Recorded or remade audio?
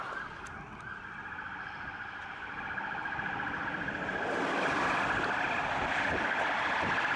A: recorded